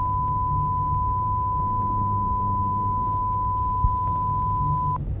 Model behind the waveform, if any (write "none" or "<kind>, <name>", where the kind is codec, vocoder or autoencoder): none